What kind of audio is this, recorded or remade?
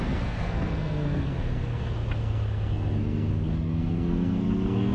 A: remade